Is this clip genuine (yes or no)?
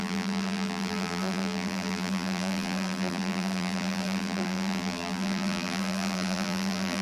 no